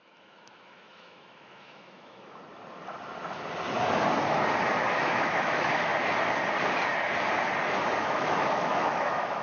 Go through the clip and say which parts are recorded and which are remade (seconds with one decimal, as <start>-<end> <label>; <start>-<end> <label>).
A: 0.0-2.4 remade; 2.4-4.9 recorded; 4.9-5.9 remade; 5.9-8.0 recorded; 8.0-9.4 remade